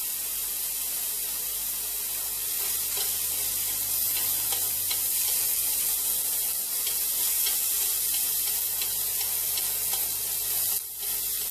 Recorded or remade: recorded